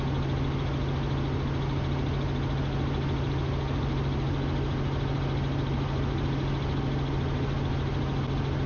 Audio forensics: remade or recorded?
recorded